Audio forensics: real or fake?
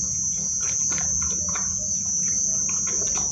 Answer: real